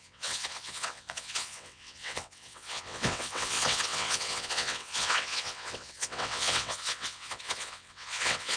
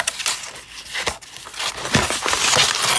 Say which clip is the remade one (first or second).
first